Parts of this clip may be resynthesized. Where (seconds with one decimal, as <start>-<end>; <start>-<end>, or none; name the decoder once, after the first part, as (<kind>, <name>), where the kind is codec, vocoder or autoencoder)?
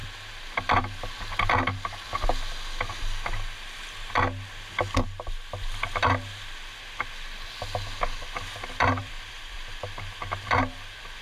9.0-9.8 (vocoder, BigVGAN v2)